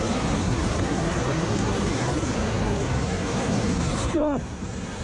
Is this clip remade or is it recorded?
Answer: remade